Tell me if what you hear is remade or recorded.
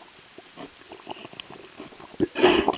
recorded